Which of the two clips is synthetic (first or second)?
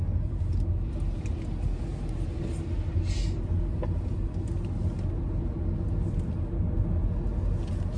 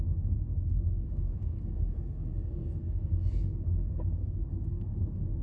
second